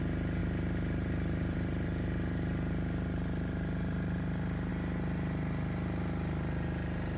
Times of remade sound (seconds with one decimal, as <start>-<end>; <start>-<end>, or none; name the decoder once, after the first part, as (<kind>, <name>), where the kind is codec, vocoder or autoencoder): 0.4-4.7 (vocoder, BigVGAN v2)